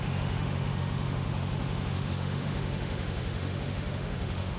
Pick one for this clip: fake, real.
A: fake